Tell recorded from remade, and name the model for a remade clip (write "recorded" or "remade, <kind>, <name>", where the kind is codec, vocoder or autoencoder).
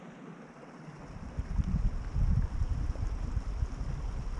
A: recorded